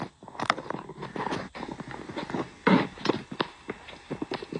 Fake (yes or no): no